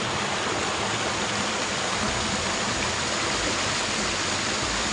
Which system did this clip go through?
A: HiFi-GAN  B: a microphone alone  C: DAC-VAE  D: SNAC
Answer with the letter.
B